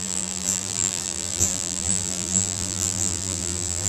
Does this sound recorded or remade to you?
remade